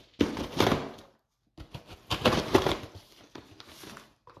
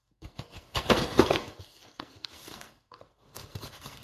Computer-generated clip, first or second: second